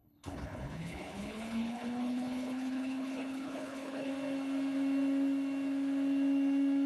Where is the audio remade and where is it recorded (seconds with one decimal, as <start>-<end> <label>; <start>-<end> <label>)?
0.0-4.1 remade; 4.1-6.9 recorded